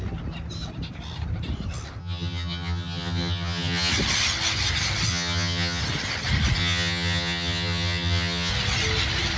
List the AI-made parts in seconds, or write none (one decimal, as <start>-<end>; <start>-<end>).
2.0-3.9; 5.1-5.8; 6.6-8.5